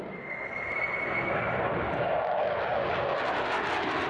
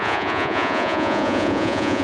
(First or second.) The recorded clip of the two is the first